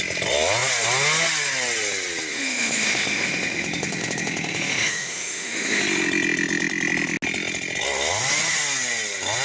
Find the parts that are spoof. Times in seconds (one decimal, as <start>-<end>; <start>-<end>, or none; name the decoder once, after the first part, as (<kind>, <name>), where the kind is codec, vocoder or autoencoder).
2.3-5.8 (autoencoder, DAC-VAE)